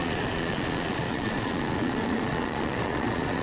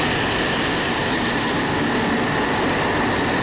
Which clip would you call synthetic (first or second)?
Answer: first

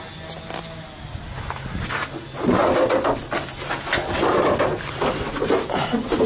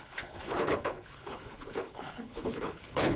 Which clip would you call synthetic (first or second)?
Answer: second